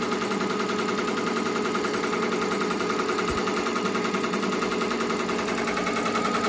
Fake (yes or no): no